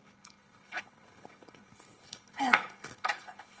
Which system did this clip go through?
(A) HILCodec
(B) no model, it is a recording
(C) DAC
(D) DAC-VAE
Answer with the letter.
A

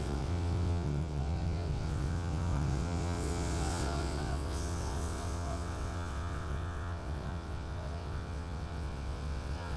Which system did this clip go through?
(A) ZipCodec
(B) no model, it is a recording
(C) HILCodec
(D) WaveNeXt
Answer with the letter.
D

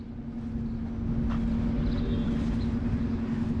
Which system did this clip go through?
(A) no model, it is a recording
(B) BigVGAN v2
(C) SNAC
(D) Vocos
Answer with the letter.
A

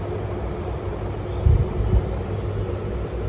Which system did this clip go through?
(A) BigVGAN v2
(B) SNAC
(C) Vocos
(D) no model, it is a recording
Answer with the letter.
D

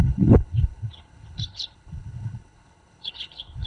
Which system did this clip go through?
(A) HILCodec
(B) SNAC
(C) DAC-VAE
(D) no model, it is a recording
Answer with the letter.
A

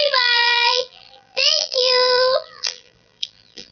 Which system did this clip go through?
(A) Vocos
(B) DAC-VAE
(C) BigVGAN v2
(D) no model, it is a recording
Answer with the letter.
C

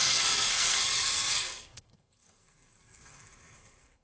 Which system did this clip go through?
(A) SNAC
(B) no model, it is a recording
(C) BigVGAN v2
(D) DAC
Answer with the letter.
A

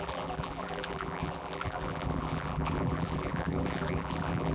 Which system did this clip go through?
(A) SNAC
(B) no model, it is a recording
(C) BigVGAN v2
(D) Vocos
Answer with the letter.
C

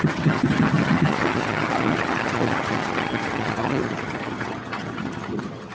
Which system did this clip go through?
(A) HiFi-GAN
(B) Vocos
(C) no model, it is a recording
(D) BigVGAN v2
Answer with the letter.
A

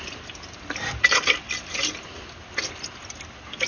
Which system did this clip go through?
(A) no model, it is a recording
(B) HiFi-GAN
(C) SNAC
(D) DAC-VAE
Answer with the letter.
A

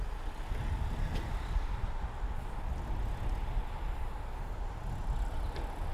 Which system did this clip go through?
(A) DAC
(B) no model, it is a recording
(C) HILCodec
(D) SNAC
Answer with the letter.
B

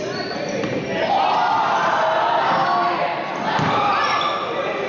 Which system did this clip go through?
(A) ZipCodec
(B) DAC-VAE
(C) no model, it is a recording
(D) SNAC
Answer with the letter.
C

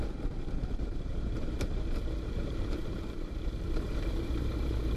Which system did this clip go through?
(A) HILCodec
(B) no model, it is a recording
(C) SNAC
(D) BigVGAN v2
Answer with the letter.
D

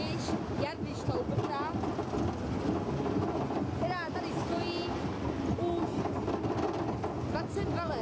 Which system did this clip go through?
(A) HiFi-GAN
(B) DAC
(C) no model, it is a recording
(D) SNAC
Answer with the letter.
C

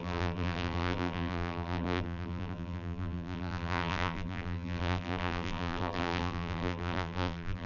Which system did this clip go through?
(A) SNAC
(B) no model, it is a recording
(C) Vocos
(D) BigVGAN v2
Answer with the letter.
D